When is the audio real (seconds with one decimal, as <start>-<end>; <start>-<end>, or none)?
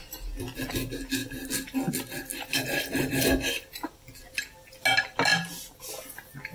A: 0.0-2.3; 3.7-5.3; 5.9-6.5